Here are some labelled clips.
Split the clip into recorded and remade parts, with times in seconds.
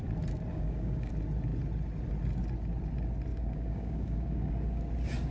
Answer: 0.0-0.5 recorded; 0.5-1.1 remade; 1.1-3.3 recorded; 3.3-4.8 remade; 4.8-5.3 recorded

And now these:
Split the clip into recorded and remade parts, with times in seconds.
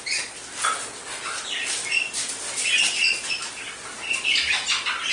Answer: 0.0-5.1 recorded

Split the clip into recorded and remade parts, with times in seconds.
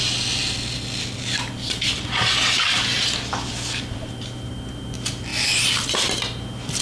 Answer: 0.0-6.8 recorded